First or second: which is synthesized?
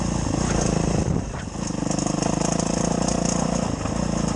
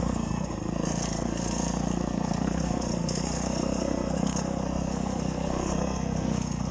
second